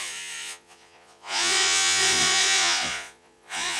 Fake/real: fake